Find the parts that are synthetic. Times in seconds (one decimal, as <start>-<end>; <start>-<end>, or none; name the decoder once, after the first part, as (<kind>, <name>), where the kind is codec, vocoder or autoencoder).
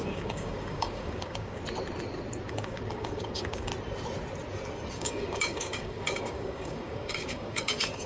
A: 0.0-1.6 (codec, DAC); 2.5-3.7; 4.9-8.1